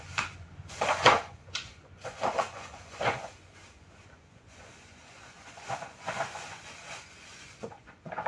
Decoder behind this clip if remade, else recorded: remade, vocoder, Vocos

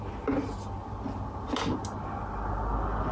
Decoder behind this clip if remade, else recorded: recorded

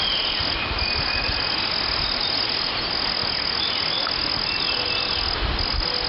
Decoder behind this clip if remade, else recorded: recorded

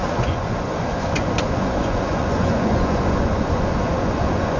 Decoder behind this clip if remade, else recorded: remade, vocoder, Vocos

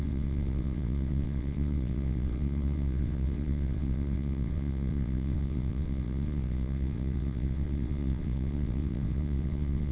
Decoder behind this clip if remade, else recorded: remade, vocoder, WaveNeXt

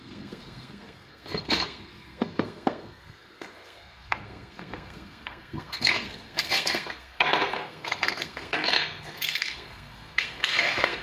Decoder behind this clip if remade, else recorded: remade, codec, SNAC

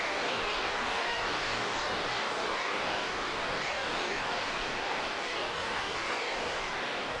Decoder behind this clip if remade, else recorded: remade, codec, DAC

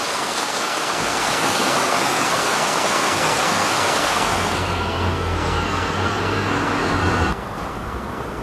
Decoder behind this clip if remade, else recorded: remade, codec, SNAC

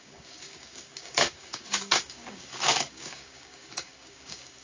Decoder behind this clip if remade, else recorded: remade, codec, DAC